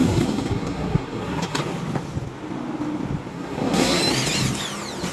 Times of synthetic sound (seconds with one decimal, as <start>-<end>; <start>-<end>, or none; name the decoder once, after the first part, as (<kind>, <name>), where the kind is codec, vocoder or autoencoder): 0.0-1.6 (codec, SNAC); 3.3-4.0

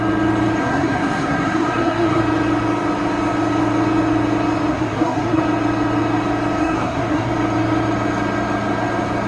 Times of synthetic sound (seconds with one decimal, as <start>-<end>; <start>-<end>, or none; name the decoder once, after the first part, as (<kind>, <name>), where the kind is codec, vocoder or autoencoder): 0.6-2.2 (codec, SNAC); 4.7-5.4; 6.6-7.3

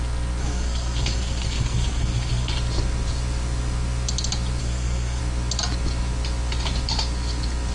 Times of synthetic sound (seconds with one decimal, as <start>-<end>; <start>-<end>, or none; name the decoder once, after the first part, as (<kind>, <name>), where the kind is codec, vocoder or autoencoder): 0.4-2.5 (codec, SNAC); 4.6-5.2

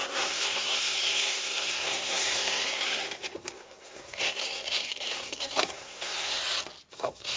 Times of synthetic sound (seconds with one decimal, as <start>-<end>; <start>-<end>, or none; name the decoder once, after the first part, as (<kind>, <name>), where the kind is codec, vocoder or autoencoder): 0.0-6.4 (codec, SNAC); 6.9-7.4